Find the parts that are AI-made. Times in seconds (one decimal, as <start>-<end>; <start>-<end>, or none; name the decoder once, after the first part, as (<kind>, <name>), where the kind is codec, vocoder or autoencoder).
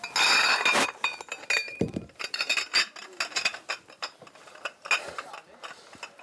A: 1.7-2.5 (vocoder, BigVGAN v2); 4.0-4.8